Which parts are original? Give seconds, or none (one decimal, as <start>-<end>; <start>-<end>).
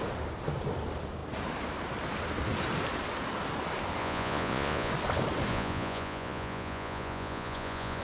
0.0-4.0; 4.9-5.5